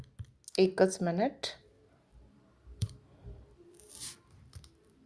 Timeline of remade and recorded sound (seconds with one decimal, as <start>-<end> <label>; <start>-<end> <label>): 0.0-2.1 recorded; 2.1-3.9 remade; 3.9-5.1 recorded